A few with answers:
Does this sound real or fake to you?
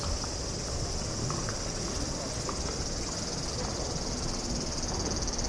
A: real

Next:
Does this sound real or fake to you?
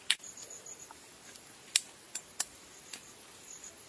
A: fake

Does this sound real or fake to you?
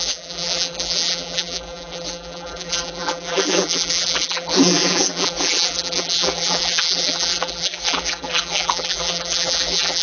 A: fake